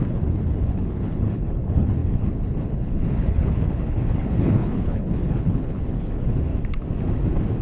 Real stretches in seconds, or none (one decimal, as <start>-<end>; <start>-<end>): 6.5-7.6